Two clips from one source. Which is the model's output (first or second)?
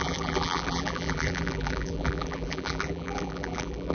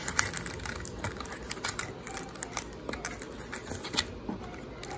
first